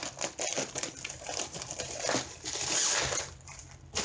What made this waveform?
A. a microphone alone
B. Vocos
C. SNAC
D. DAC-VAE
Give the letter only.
A